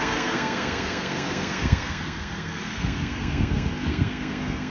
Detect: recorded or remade remade